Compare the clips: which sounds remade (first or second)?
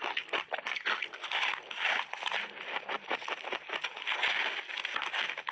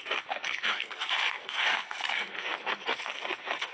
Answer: second